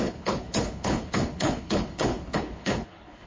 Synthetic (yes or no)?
yes